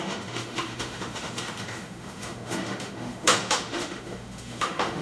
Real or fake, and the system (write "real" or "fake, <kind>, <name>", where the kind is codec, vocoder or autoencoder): fake, autoencoder, DAC-VAE